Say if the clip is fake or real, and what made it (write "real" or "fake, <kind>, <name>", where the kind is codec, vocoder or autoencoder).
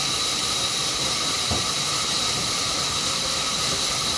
fake, vocoder, BigVGAN v2